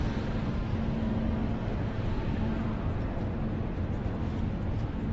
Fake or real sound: real